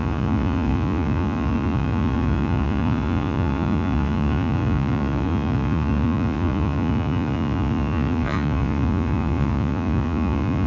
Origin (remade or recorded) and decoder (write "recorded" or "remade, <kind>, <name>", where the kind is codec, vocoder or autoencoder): remade, vocoder, Vocos